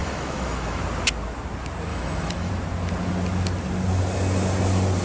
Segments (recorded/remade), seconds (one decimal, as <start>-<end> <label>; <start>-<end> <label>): 0.0-0.8 remade; 0.8-1.9 recorded; 1.9-2.5 remade; 2.5-5.0 recorded

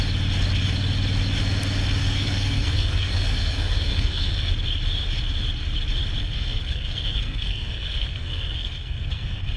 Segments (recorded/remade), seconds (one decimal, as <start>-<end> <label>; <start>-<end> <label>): 0.0-2.0 recorded; 2.0-4.5 remade; 4.5-6.2 recorded; 6.2-9.6 remade

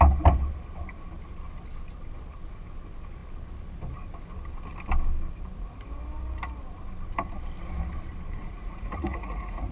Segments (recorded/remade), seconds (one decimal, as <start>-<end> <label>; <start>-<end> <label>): 0.0-8.4 recorded; 8.4-9.7 remade

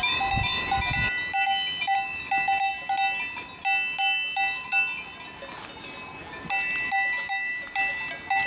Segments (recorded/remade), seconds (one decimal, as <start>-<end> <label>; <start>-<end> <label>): 0.0-8.5 recorded

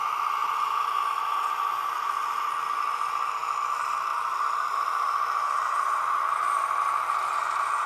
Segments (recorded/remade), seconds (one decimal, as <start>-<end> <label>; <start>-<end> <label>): 0.0-4.1 recorded; 4.1-6.8 remade; 6.8-7.9 recorded